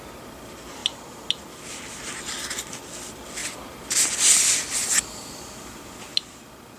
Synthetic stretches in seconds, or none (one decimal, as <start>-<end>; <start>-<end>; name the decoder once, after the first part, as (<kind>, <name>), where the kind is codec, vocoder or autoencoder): none